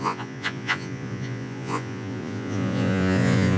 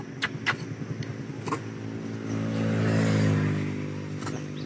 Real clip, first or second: second